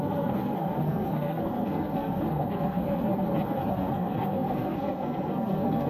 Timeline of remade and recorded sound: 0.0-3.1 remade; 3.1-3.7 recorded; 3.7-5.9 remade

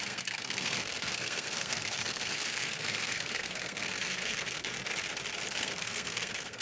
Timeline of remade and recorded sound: 0.0-4.7 remade; 4.7-5.5 recorded; 5.5-6.6 remade

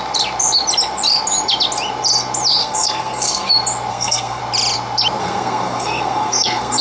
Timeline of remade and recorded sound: 0.0-2.6 recorded; 2.6-3.5 remade; 3.5-3.9 recorded; 3.9-4.4 remade; 4.4-5.2 recorded; 5.2-6.8 remade

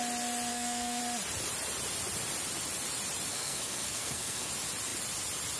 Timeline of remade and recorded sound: 0.0-0.5 recorded; 0.5-1.0 remade; 1.0-3.3 recorded; 3.3-4.5 remade; 4.5-5.6 recorded

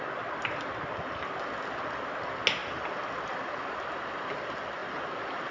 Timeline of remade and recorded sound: 0.0-5.5 recorded

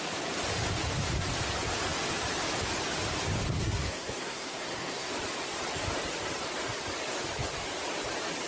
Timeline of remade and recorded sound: 0.0-3.6 recorded; 3.6-5.1 remade; 5.1-8.5 recorded